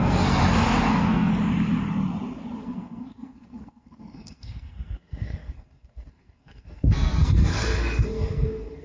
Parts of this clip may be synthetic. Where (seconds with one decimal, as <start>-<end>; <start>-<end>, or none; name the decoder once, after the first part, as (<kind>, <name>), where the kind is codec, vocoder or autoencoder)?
0.0-0.4 (codec, SNAC); 0.9-1.3; 2.6-8.8

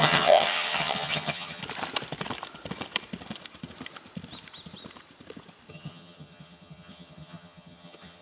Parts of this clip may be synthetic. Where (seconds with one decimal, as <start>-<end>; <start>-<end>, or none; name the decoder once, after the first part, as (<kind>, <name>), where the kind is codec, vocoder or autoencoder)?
0.0-1.6 (vocoder, HiFi-GAN); 5.7-8.2

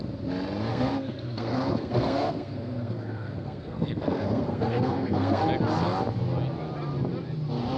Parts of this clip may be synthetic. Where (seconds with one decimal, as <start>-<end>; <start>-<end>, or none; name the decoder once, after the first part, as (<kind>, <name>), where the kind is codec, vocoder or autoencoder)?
0.7-5.4 (codec, SNAC)

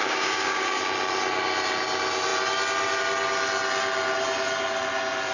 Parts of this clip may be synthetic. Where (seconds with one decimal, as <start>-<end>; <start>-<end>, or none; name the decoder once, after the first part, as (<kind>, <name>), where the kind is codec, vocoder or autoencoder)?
0.0-0.8 (codec, DAC)

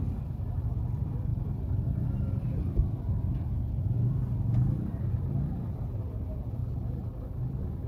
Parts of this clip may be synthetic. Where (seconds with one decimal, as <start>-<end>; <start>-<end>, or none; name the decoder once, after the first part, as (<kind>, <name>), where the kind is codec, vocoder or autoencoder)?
none

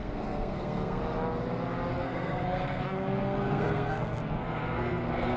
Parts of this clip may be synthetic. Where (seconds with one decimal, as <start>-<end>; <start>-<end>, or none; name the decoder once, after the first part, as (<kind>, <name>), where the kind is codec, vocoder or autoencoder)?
0.0-1.0 (codec, SNAC); 1.9-5.4